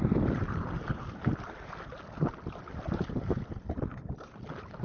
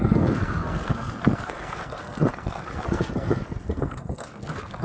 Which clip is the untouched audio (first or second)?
first